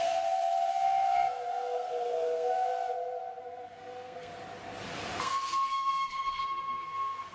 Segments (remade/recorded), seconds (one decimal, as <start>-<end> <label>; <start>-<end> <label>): 0.0-2.7 remade; 2.7-3.4 recorded; 3.4-4.3 remade; 4.3-5.2 recorded; 5.2-7.3 remade